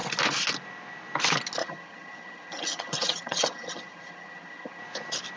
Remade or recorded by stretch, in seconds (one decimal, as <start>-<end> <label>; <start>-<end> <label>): 0.0-1.6 recorded; 1.6-4.8 remade; 4.8-5.4 recorded